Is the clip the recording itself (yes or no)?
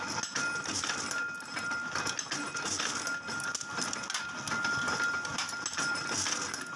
yes